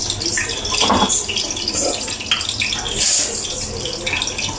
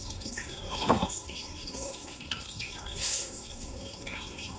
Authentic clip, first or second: first